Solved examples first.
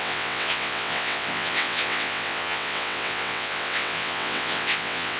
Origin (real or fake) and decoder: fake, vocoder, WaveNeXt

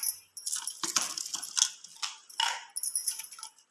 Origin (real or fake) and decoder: real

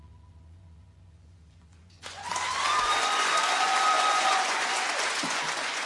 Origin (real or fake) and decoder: fake, vocoder, Vocos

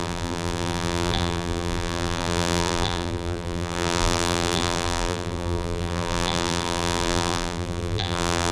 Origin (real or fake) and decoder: fake, vocoder, BigVGAN v2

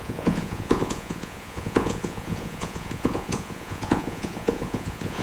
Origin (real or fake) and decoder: fake, vocoder, Vocos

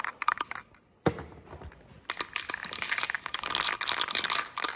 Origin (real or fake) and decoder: real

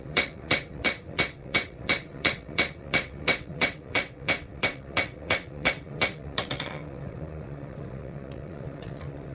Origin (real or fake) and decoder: fake, vocoder, WaveNeXt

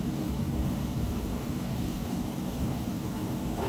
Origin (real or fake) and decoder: fake, codec, DAC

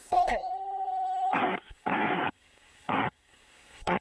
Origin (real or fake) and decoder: fake, codec, SNAC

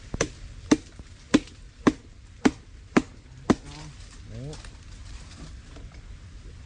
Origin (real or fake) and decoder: real